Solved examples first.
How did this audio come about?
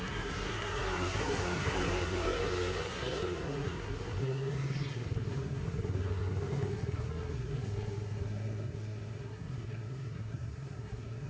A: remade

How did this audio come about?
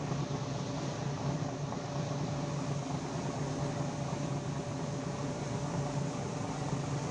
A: recorded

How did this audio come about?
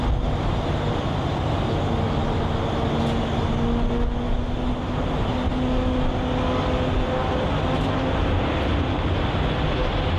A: recorded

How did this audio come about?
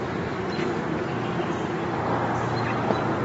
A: remade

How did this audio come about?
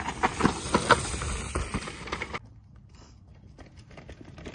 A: recorded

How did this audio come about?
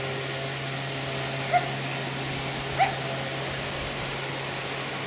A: recorded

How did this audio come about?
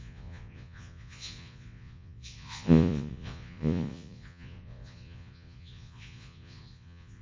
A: remade